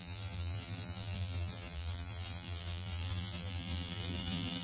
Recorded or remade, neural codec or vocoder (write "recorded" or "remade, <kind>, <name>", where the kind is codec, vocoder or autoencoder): remade, vocoder, BigVGAN v2